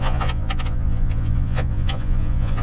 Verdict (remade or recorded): remade